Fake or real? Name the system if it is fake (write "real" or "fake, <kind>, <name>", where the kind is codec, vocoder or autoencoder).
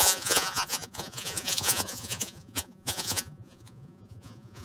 fake, vocoder, Vocos